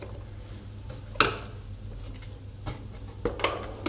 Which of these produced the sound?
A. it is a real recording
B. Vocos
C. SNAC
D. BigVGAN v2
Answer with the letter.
A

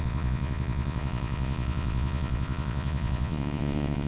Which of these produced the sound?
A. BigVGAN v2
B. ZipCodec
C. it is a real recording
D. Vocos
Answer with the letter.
D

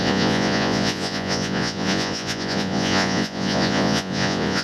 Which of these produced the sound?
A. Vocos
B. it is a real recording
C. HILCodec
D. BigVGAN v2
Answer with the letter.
A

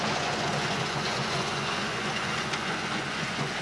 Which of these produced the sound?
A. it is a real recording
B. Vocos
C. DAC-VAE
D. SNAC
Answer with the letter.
B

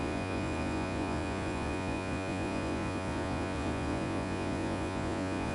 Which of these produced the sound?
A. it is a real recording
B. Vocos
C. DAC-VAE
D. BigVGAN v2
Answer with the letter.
B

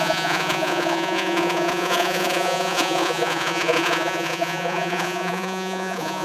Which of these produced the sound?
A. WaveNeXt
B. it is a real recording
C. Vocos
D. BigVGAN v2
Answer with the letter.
C